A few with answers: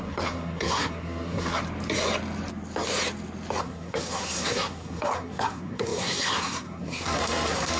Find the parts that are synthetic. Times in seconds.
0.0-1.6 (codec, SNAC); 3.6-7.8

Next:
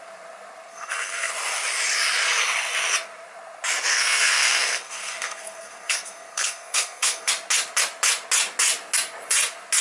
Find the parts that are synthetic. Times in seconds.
0.7-1.3 (codec, SNAC); 3.9-7.3

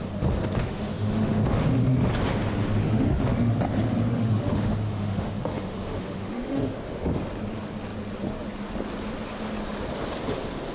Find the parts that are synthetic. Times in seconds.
0.6-2.1 (autoencoder, DAC-VAE); 2.8-3.6; 4.1-7.1

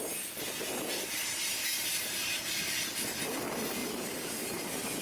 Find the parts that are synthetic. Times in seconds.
1.7-2.6 (vocoder, BigVGAN v2); 3.8-5.0